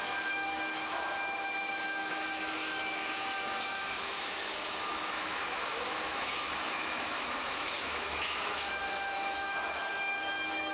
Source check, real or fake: fake